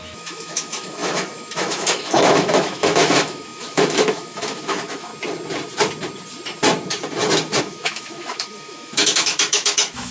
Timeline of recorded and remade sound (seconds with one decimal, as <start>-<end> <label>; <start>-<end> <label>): 0.0-5.1 remade; 5.1-7.6 recorded; 7.6-10.1 remade